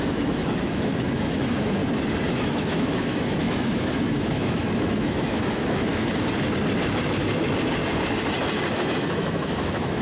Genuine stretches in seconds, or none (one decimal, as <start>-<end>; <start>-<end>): 1.8-2.3; 5.9-9.1